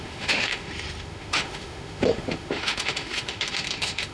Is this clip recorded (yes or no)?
no